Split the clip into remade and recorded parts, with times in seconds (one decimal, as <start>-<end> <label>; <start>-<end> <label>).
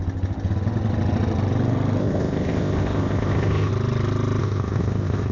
0.0-2.0 recorded; 2.0-3.7 remade; 3.7-4.4 recorded; 4.4-5.3 remade